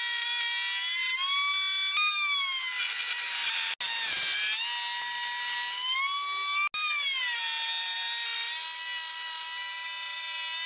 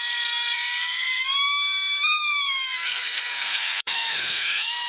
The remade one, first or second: second